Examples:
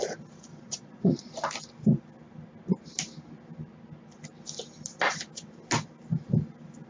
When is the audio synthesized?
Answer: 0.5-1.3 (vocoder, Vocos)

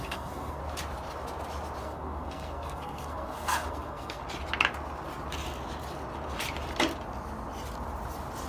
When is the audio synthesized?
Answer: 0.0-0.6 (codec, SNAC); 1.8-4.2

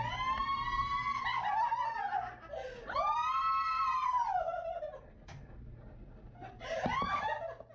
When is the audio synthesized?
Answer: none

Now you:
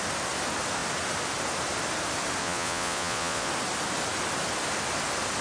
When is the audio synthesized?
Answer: 2.4-3.5 (vocoder, Vocos)